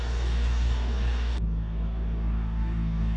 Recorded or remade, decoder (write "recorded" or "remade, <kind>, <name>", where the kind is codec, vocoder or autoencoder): remade, codec, DAC